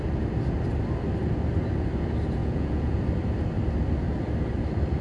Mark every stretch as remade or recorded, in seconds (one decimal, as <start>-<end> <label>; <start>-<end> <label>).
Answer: 0.0-2.4 recorded; 2.4-3.0 remade; 3.0-5.0 recorded